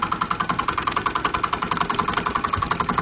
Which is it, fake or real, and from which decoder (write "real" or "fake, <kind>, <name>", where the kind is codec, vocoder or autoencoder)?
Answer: real